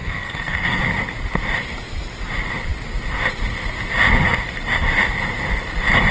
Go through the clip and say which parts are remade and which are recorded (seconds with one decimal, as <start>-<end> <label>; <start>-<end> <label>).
0.0-0.8 remade; 0.8-6.1 recorded